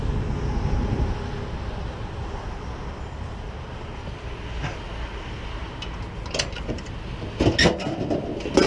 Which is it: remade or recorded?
recorded